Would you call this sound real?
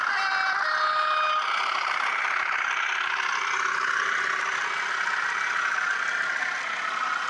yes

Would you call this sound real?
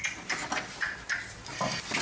yes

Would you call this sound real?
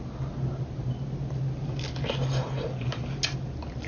yes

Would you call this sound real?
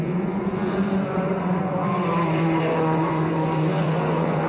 no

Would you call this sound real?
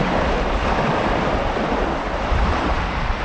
no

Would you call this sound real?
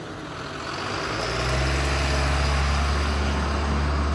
yes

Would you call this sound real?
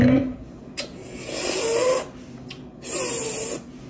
yes